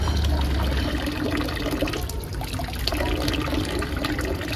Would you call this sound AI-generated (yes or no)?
no